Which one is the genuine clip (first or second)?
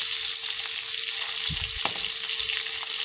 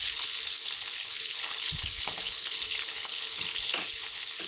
first